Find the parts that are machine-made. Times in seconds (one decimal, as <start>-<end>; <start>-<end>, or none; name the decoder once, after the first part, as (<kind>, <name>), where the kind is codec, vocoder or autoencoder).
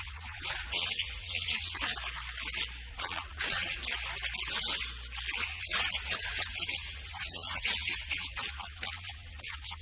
0.0-1.9 (vocoder, Vocos); 2.9-3.8; 5.4-9.8